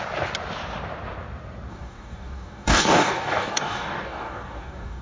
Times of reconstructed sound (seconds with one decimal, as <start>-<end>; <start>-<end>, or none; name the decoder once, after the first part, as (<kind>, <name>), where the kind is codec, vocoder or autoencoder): 1.7-5.0 (codec, DAC)